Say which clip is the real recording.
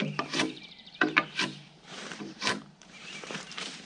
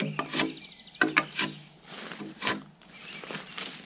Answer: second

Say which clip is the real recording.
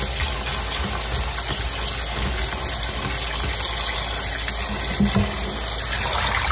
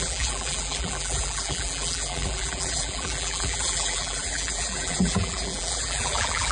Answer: first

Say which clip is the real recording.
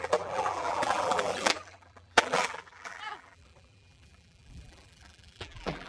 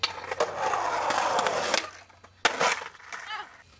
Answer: second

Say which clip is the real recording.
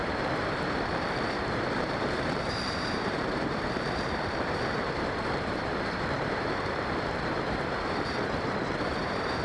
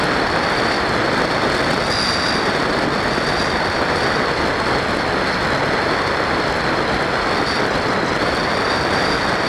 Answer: second